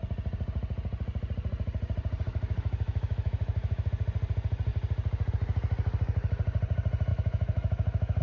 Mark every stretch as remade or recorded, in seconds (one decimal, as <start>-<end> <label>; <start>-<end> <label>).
0.0-2.3 recorded; 2.3-3.9 remade; 3.9-7.1 recorded; 7.1-8.2 remade